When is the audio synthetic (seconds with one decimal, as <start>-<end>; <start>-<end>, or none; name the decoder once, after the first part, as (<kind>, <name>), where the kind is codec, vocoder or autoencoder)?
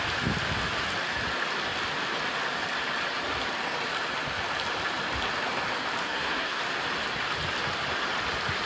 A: 6.0-6.6 (codec, SNAC)